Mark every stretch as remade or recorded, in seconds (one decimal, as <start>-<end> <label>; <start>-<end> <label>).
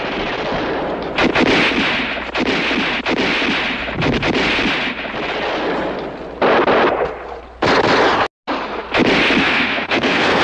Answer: 0.0-9.4 recorded; 9.4-10.4 remade